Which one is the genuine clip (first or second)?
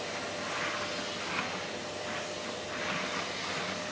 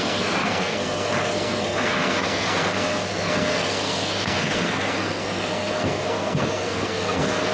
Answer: first